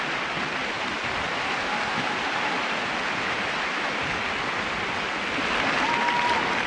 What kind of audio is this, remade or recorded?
recorded